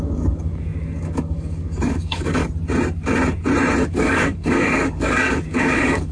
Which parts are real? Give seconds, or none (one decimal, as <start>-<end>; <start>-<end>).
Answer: 2.4-3.9